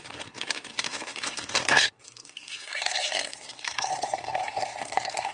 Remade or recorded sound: remade